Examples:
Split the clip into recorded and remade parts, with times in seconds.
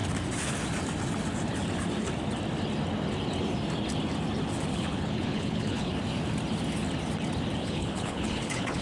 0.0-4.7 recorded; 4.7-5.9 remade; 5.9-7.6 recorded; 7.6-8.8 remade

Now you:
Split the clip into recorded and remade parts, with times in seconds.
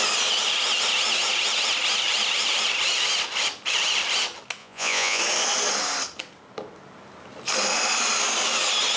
0.0-4.6 recorded; 4.6-5.2 remade; 5.2-9.0 recorded